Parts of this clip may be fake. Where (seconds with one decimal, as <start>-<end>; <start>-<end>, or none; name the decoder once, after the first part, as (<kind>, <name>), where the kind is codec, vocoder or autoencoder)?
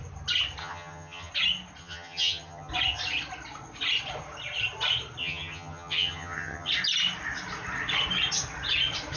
0.6-1.3 (vocoder, HiFi-GAN); 1.8-2.7; 5.2-6.7